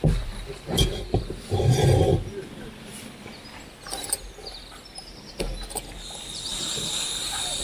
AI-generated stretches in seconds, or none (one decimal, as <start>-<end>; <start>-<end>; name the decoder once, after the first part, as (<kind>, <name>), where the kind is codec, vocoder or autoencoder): 0.0-2.1 (vocoder, BigVGAN v2); 6.7-7.6